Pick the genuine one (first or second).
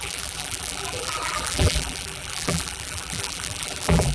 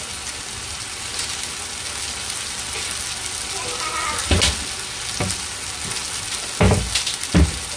second